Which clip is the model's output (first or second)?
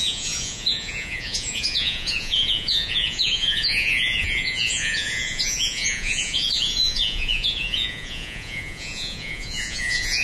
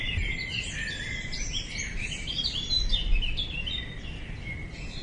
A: first